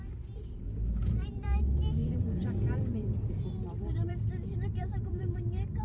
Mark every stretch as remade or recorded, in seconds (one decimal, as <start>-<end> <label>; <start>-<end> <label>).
0.0-1.0 recorded; 1.0-1.6 remade; 1.6-2.0 recorded; 2.0-5.8 remade

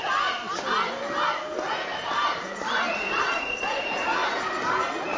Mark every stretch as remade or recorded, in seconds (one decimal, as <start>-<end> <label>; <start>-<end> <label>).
0.0-1.9 recorded; 1.9-5.2 remade

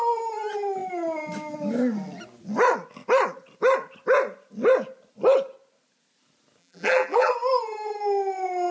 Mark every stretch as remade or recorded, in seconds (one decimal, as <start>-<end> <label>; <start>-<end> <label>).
0.0-6.6 recorded; 6.6-7.3 remade; 7.3-8.7 recorded

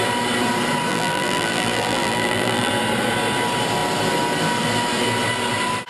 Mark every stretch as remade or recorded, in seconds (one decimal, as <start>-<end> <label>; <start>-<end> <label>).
0.0-0.9 recorded; 0.9-2.7 remade; 2.7-5.9 recorded

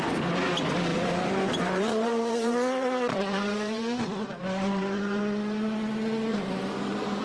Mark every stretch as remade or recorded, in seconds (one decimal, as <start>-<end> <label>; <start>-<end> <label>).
0.0-0.9 recorded; 0.9-5.2 remade; 5.2-6.3 recorded; 6.3-7.2 remade

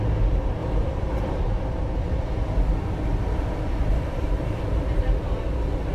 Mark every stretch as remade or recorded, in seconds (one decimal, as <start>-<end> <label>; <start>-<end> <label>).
0.0-0.6 recorded; 0.6-1.4 remade; 1.4-3.9 recorded; 3.9-4.6 remade; 4.6-5.9 recorded

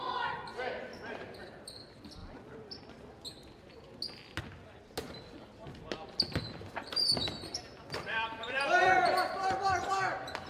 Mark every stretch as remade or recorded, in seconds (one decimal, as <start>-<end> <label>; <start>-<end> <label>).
0.0-0.9 recorded; 0.9-1.6 remade; 1.6-7.2 recorded; 7.2-9.8 remade; 9.8-10.5 recorded

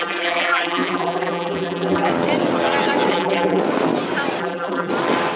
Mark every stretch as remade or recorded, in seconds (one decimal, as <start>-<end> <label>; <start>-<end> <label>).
0.0-2.1 remade; 2.1-3.1 recorded; 3.1-3.6 remade; 3.6-4.4 recorded; 4.4-4.9 remade; 4.9-5.4 recorded